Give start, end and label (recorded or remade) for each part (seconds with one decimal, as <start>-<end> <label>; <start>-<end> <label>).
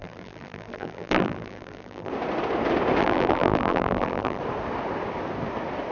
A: 0.0-2.1 remade; 2.1-3.0 recorded; 3.0-4.4 remade; 4.4-5.9 recorded